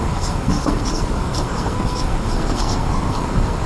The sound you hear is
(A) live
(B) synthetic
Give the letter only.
B